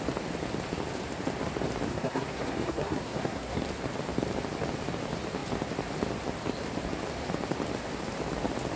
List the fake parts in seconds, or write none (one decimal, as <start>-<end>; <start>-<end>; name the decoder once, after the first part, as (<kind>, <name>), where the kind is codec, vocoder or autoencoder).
1.9-3.6 (codec, SNAC)

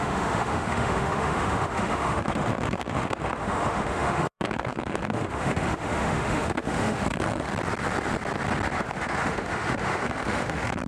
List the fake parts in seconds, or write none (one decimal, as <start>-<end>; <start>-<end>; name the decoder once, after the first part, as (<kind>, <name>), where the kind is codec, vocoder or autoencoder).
0.0-7.5 (autoencoder, DAC-VAE); 8.8-10.9